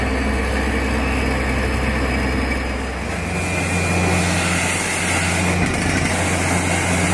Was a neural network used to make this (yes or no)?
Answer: no